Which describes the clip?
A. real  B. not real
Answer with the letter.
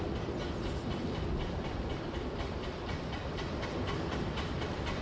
A